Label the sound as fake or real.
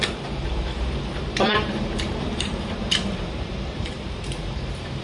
fake